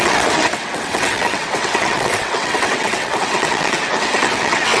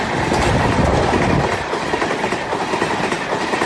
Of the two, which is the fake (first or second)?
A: first